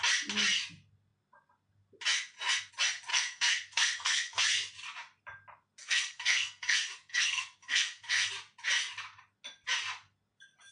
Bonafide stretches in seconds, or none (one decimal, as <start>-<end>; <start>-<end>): 0.0-3.1; 4.4-5.8; 8.3-10.7